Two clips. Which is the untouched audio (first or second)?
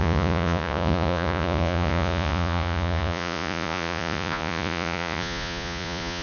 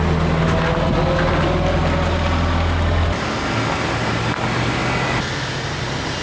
second